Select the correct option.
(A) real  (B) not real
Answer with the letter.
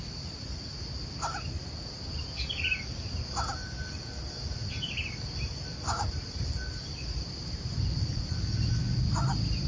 A